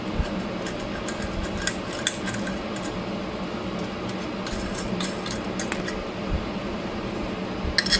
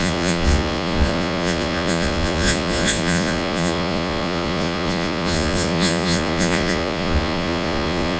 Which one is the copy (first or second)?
second